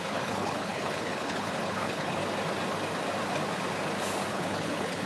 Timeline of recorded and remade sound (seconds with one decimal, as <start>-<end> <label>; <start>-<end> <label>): 0.0-2.2 remade; 2.2-4.3 recorded; 4.3-5.1 remade